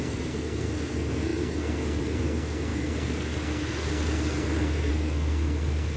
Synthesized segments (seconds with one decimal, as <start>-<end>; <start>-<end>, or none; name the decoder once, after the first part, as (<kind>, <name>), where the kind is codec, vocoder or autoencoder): 0.0-6.0 (codec, SNAC)